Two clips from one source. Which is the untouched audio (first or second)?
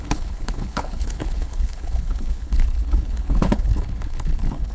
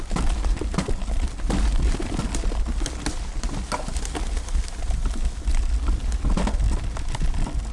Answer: second